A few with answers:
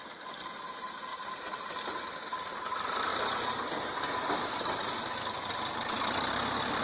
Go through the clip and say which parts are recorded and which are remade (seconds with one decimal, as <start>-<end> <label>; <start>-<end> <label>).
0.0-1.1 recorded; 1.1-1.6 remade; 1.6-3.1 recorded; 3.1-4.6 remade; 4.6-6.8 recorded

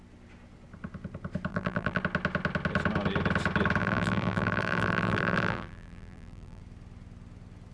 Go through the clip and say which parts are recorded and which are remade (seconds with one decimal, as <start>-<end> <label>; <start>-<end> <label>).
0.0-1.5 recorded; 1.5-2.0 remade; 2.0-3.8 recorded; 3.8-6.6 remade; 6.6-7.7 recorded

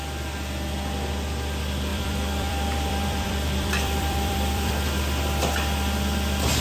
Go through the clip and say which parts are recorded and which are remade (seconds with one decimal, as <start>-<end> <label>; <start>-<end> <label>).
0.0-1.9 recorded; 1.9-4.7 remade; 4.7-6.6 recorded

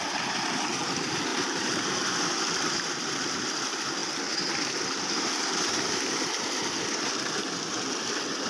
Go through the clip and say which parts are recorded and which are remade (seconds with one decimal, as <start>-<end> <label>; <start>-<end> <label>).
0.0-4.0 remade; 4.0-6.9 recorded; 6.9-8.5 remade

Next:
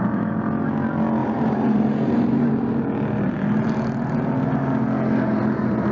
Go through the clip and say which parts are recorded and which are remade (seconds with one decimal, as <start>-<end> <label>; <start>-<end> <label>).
0.0-1.2 recorded; 1.2-2.5 remade; 2.5-5.9 recorded